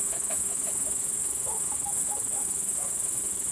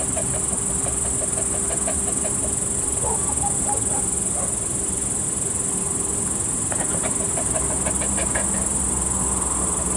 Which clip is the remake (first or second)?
first